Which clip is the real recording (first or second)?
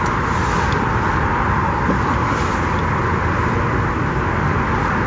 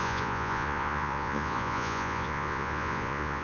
first